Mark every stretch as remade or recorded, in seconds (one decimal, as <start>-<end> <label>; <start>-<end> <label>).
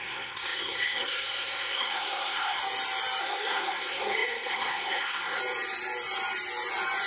0.0-2.6 remade; 2.6-3.2 recorded; 3.2-5.4 remade; 5.4-7.1 recorded